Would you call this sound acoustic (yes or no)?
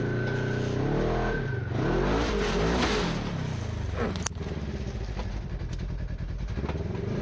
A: yes